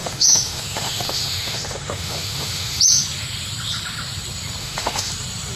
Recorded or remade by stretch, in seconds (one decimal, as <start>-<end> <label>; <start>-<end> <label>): 0.0-2.8 remade; 2.8-4.6 recorded; 4.6-5.1 remade; 5.1-5.6 recorded